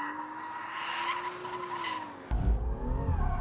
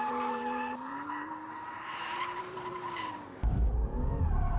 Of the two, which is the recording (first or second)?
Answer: first